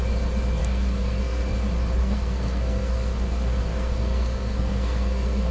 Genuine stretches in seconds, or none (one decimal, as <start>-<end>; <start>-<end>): 0.0-0.6; 1.5-2.0